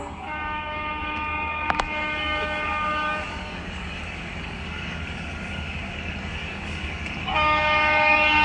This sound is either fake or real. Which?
fake